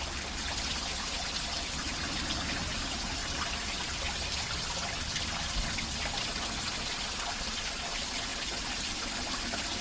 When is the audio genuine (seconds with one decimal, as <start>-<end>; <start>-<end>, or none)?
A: 3.2-5.2; 6.3-6.9; 8.3-9.8

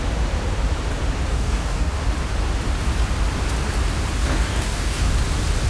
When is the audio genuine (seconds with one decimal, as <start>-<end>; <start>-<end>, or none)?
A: 0.0-1.3; 2.0-4.2; 5.1-5.7

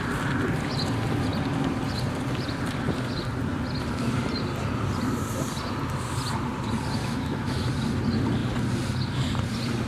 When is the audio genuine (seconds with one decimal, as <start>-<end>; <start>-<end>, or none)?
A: 0.0-7.0; 7.7-9.9

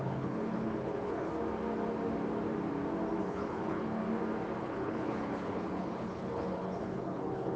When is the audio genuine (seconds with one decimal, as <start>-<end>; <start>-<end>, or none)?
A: 1.3-3.2; 4.0-4.6